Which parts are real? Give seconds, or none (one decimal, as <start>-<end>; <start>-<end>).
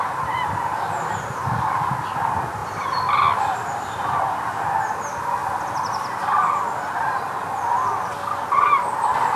0.0-9.4